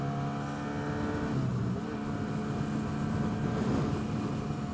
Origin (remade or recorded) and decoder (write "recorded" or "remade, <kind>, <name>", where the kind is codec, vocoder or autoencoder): recorded